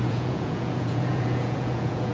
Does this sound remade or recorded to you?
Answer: remade